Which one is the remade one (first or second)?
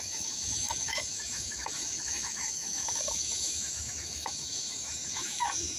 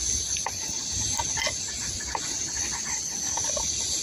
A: first